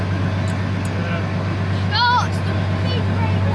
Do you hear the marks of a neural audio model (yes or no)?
no